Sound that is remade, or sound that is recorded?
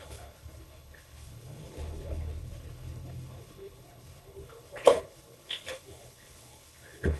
remade